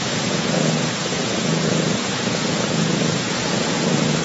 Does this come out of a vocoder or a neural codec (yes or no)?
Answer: yes